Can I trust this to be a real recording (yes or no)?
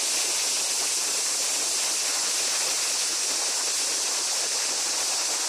yes